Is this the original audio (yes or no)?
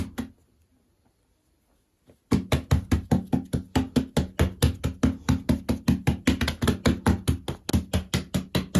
yes